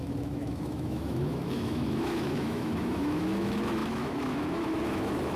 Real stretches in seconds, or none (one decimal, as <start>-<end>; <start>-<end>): none

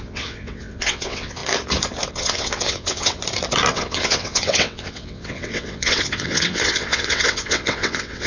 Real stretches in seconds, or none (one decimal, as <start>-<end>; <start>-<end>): 1.4-2.1; 3.2-3.7

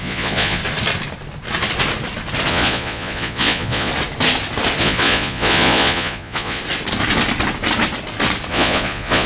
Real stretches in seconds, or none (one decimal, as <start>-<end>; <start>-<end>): 0.6-2.5; 3.9-4.8; 6.6-8.5

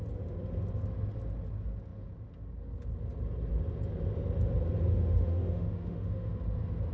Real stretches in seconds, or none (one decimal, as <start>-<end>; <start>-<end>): 0.0-4.9; 6.3-6.9

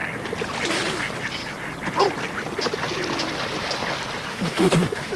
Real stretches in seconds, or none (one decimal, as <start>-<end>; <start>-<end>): 0.0-4.3

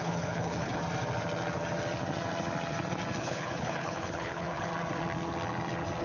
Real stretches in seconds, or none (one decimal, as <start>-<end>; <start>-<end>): 0.8-3.2; 4.7-6.0

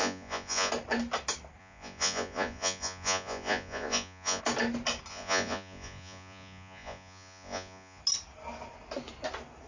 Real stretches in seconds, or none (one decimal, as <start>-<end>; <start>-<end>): 0.7-1.6; 4.4-5.1; 8.0-9.7

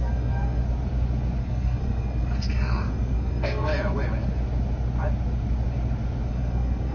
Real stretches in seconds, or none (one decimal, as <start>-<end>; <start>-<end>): 0.6-1.4; 3.7-6.3